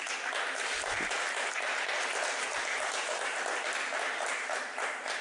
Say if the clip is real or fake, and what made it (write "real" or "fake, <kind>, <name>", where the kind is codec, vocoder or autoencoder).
fake, vocoder, BigVGAN v2